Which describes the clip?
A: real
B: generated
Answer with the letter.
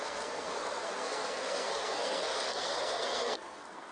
B